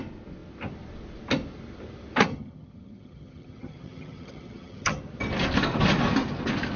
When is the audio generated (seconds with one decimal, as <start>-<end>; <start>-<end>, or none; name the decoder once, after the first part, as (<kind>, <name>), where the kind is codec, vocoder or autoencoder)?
2.3-5.0 (vocoder, HiFi-GAN)

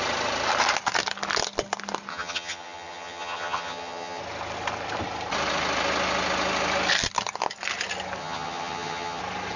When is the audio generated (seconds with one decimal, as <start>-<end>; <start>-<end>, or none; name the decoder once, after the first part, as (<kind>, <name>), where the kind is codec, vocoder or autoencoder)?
2.1-4.2 (vocoder, HiFi-GAN); 8.2-9.2

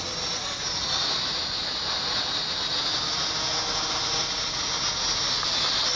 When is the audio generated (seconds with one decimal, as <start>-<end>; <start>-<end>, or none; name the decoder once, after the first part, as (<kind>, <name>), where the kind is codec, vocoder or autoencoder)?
none

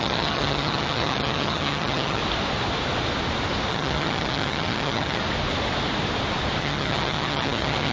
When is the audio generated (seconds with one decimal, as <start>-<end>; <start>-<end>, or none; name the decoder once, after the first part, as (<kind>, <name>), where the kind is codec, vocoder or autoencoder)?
0.0-2.2 (vocoder, HiFi-GAN); 3.7-5.2; 6.6-7.9